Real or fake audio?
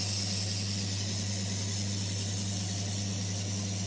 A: real